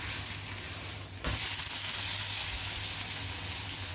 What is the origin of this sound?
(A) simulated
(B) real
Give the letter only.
B